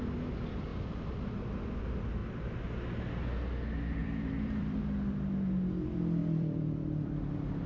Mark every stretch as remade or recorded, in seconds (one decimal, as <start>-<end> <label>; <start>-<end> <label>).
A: 0.0-0.7 recorded; 0.7-1.8 remade; 1.8-4.0 recorded; 4.0-4.8 remade; 4.8-6.2 recorded; 6.2-7.2 remade; 7.2-7.7 recorded